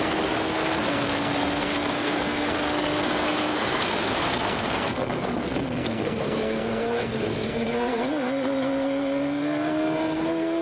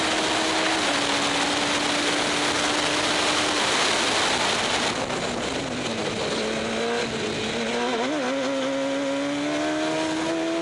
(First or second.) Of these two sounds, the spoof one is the first